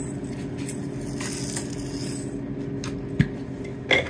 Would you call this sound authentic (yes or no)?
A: yes